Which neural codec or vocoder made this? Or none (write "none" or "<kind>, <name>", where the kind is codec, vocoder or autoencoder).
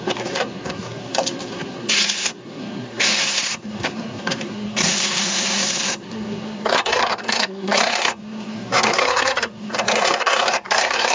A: codec, SNAC